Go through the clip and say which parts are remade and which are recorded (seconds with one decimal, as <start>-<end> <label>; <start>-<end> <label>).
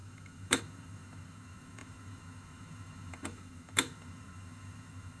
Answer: 0.0-5.2 remade